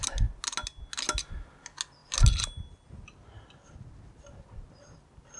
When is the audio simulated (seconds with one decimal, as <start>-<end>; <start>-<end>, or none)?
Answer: none